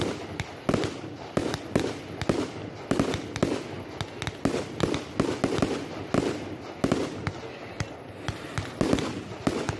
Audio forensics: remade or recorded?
recorded